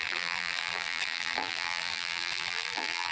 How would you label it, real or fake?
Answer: fake